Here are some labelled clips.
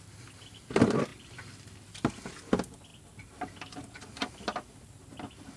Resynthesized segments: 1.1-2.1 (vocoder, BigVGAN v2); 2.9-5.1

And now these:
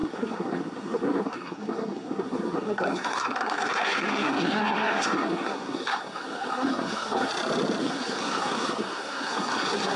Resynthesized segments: 0.0-7.3 (codec, SNAC); 7.8-10.0

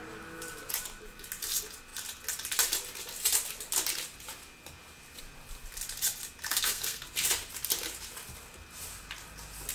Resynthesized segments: 6.5-7.0 (codec, SNAC)

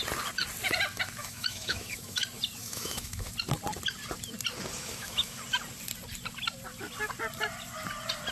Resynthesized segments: 1.2-2.2 (autoencoder, DAC-VAE); 2.6-3.3; 4.8-5.4

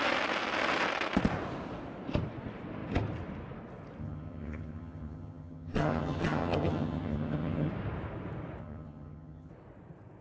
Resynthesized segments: 4.0-7.7 (vocoder, HiFi-GAN); 8.6-9.5